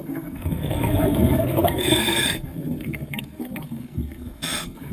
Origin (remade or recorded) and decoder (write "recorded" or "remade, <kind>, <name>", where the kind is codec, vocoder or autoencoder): remade, codec, SNAC